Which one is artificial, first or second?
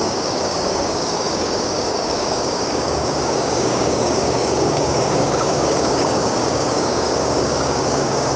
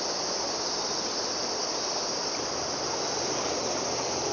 first